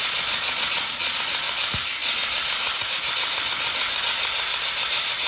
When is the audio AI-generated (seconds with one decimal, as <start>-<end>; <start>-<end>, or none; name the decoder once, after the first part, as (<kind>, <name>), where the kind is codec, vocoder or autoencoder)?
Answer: 0.0-1.2 (vocoder, Vocos)